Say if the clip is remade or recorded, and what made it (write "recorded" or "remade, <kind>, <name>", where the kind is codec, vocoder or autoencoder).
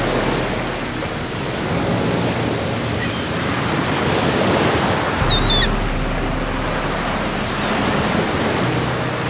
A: recorded